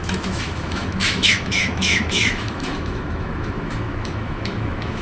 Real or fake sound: fake